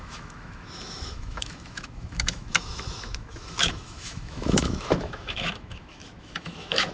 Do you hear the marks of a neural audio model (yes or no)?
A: yes